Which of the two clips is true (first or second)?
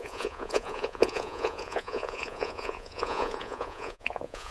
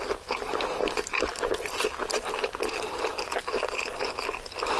second